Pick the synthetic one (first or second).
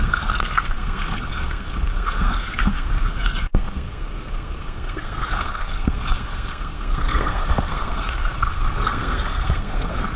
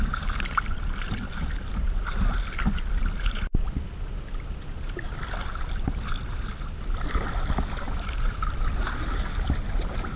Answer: first